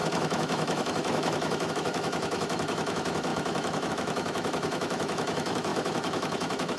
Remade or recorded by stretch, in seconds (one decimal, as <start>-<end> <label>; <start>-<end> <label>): 0.0-6.8 remade